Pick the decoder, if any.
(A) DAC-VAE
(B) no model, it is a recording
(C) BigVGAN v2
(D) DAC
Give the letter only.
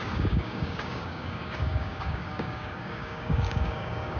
D